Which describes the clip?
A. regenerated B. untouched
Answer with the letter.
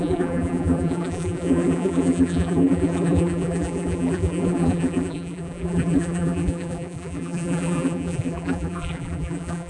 A